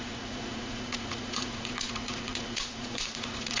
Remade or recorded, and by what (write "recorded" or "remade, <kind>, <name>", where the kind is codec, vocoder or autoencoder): remade, vocoder, Vocos